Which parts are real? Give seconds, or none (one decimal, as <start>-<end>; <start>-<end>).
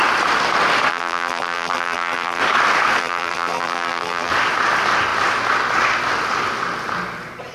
0.0-0.9; 2.4-3.0; 4.3-7.5